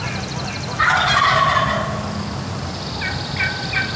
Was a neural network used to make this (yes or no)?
no